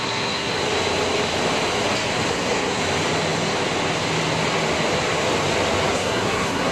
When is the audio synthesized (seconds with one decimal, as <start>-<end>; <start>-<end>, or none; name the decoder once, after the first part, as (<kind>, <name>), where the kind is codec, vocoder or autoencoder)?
0.0-0.5 (codec, SNAC); 2.3-2.8; 5.9-6.7